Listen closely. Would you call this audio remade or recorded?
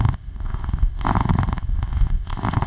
remade